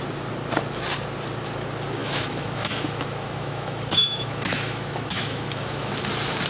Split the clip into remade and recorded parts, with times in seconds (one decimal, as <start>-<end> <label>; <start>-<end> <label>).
0.0-2.0 recorded; 2.0-5.9 remade; 5.9-6.5 recorded